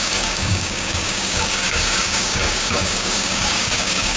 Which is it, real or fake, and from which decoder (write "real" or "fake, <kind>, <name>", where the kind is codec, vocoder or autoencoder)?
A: fake, codec, DAC